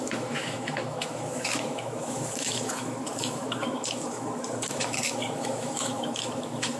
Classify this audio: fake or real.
fake